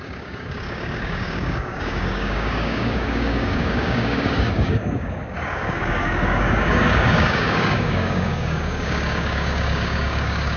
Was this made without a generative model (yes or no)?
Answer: no